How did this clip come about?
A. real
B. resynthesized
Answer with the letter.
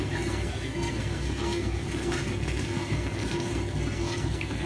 B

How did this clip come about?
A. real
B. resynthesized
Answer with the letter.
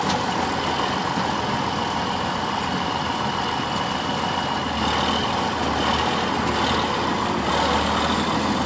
A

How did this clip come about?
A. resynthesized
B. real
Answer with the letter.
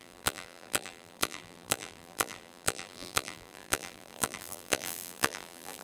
A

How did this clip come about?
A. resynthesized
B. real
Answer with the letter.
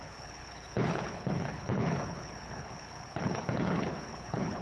A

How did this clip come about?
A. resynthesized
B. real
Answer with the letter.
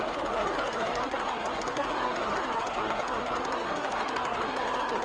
A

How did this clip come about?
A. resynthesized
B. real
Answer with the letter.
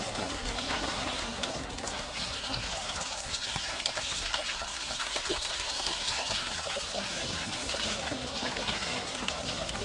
A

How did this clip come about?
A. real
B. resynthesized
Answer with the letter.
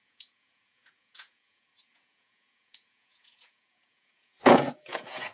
B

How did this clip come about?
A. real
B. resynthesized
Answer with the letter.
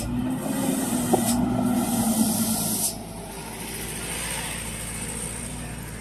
A